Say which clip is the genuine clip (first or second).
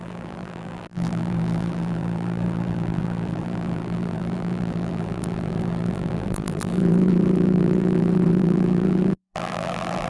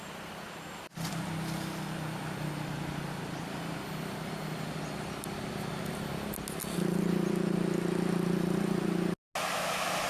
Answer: second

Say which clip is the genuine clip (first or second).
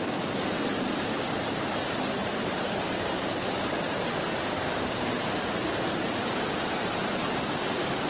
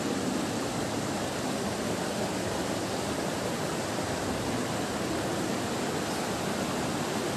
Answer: second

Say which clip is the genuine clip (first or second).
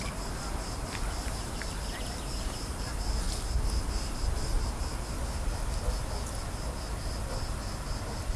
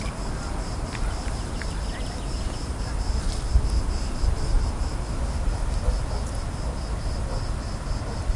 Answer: first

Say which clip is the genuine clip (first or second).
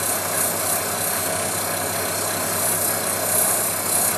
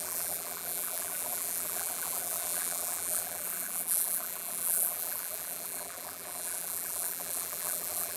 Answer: first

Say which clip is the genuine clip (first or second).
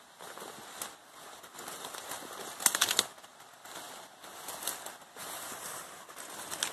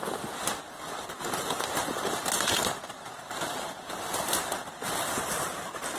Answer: first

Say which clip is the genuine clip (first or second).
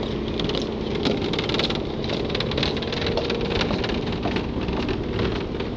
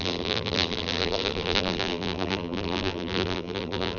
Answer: first